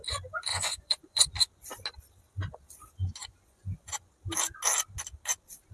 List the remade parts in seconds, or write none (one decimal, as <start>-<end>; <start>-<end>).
0.5-1.3; 3.2-4.1